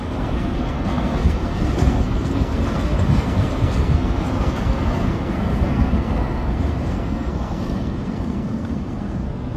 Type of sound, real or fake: fake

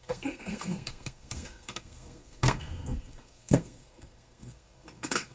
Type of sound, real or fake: fake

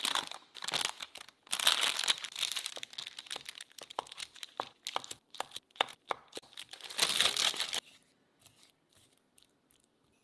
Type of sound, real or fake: real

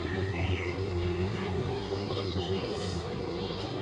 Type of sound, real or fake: fake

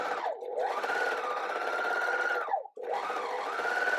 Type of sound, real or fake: real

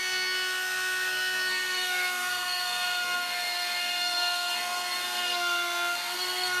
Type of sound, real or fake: fake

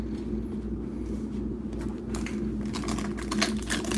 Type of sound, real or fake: real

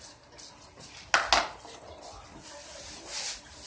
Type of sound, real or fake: real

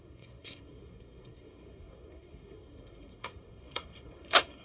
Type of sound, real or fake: fake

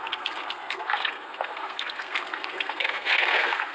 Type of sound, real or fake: fake